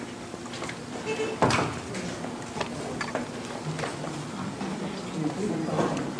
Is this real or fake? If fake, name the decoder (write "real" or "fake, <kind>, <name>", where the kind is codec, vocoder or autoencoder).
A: real